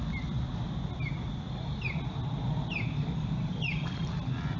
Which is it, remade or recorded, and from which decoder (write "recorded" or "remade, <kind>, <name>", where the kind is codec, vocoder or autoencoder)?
recorded